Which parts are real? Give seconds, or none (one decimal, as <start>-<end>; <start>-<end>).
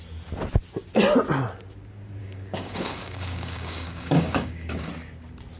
0.0-2.2; 4.9-5.6